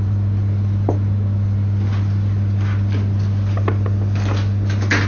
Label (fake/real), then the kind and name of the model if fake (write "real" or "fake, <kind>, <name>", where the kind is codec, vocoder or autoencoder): real